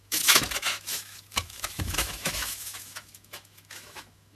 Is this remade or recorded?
remade